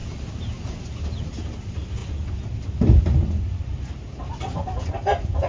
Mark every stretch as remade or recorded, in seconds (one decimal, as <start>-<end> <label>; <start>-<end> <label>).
0.0-5.5 recorded